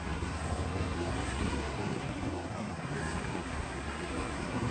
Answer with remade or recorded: remade